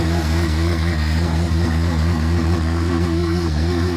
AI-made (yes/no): yes